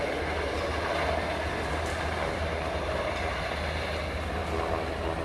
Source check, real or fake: real